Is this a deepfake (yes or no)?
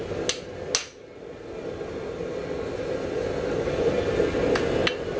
no